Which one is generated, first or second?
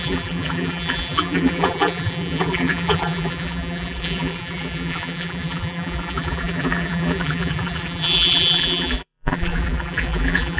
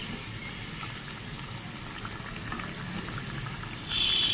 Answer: first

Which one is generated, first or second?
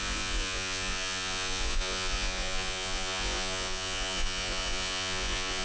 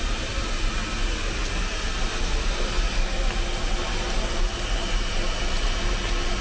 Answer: first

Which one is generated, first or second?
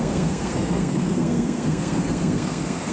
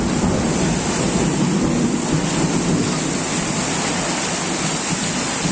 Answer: first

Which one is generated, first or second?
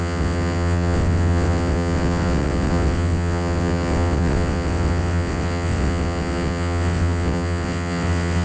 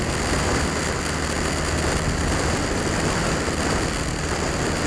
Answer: first